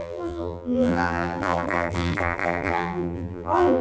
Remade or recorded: remade